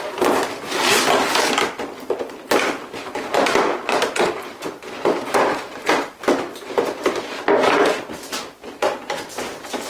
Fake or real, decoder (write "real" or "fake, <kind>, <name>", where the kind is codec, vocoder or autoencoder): real